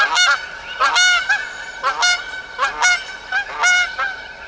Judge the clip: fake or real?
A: real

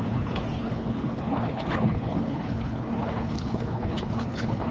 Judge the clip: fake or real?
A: fake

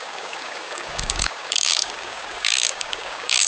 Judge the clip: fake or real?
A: fake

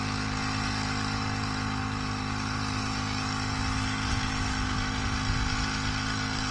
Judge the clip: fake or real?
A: real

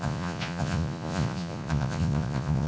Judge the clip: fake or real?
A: fake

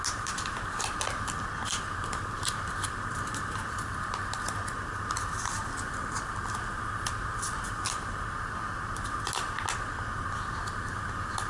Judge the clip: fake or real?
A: real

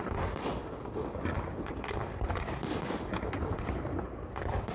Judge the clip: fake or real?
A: real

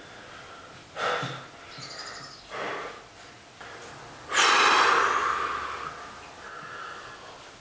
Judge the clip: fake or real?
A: real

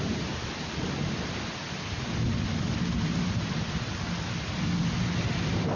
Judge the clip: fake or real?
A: real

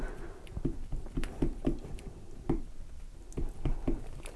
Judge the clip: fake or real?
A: real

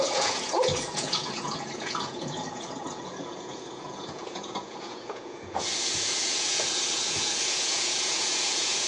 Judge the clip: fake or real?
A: fake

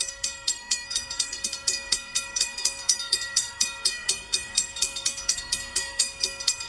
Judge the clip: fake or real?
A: fake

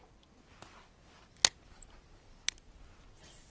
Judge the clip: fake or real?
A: real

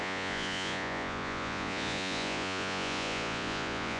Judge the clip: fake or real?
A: fake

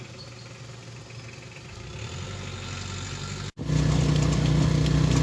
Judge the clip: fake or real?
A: real